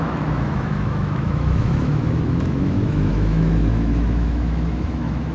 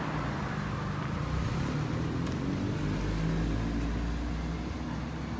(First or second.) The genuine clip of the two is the second